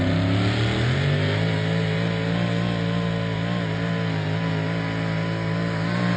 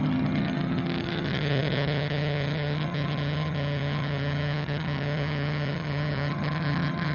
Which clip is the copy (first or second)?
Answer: second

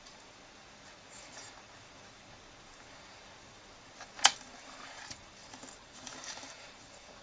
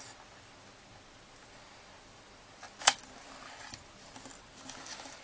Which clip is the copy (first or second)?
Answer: first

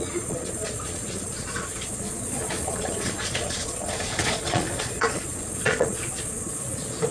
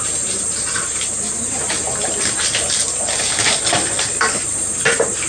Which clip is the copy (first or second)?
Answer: first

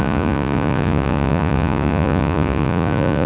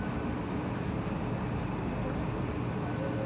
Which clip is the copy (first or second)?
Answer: first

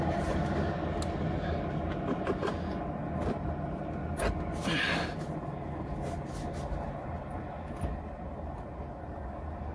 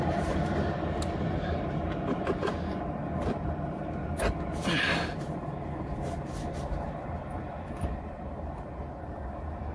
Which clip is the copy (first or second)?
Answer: second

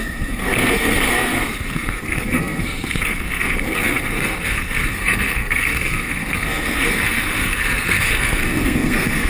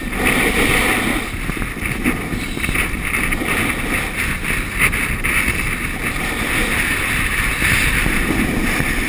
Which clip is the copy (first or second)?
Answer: first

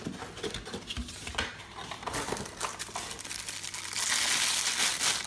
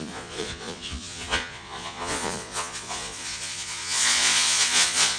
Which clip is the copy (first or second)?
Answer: second